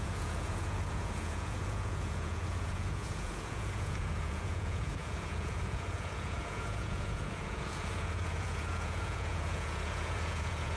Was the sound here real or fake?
fake